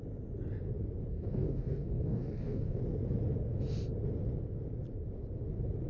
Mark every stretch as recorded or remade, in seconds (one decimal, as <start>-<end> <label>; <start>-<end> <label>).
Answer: 0.0-1.1 recorded; 1.1-2.8 remade; 2.8-5.9 recorded